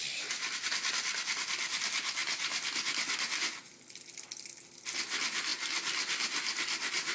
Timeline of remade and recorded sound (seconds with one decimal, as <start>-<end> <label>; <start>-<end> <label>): 0.0-7.1 recorded